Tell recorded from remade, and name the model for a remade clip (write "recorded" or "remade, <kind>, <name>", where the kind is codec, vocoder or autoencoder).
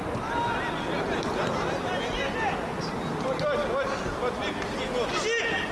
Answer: recorded